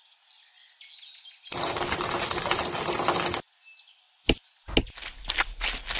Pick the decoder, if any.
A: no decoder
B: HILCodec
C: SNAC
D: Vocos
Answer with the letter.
A